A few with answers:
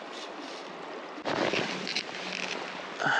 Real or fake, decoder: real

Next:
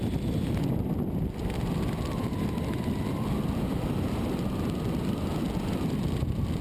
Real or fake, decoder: real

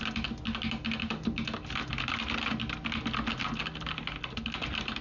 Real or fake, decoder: real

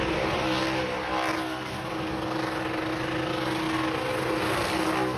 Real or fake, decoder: real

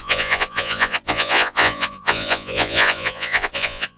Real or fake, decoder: fake, vocoder, Vocos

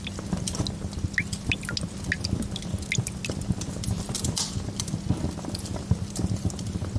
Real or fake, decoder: real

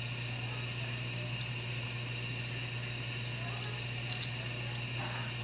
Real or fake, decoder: real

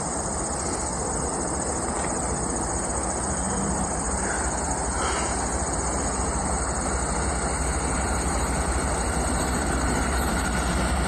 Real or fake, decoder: fake, vocoder, BigVGAN v2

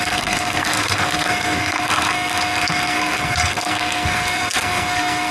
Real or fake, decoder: fake, codec, SNAC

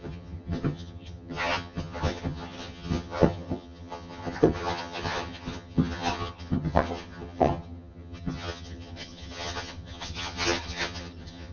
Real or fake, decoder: fake, vocoder, HiFi-GAN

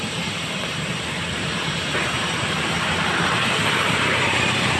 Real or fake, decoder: fake, vocoder, BigVGAN v2